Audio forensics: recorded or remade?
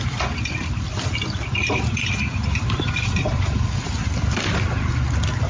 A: recorded